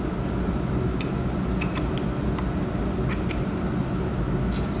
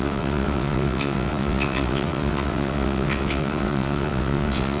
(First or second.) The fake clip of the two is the second